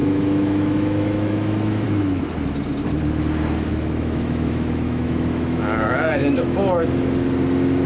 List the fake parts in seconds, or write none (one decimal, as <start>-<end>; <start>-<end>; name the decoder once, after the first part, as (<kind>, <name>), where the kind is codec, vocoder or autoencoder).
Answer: 0.0-2.2 (autoencoder, DAC-VAE); 3.7-6.6